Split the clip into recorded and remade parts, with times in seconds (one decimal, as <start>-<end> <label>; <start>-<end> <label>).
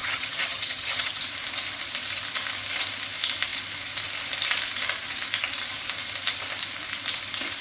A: 0.0-1.2 remade; 1.2-7.6 recorded